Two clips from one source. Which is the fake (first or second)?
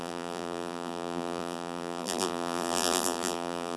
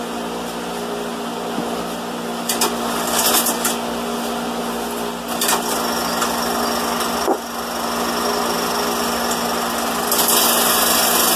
first